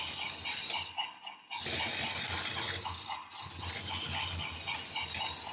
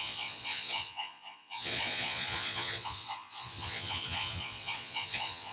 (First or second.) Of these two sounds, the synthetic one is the second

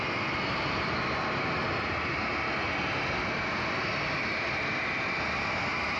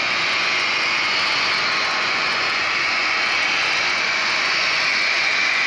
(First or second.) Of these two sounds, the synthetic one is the second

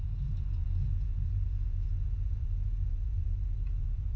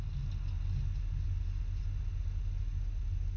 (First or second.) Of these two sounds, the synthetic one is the first